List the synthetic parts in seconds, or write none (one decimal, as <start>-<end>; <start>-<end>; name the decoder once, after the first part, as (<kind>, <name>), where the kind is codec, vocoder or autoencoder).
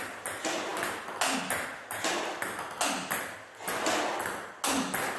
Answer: none